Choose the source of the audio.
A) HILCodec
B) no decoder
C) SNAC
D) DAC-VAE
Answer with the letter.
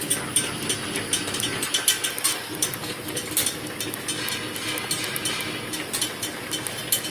B